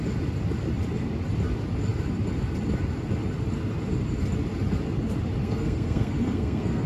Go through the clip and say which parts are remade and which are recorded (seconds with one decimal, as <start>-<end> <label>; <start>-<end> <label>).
0.0-5.4 recorded; 5.4-6.9 remade